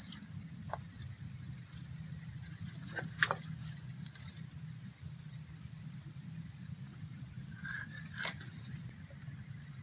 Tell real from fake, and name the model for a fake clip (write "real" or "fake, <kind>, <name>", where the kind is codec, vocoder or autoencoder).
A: real